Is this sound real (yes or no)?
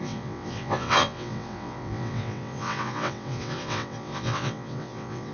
no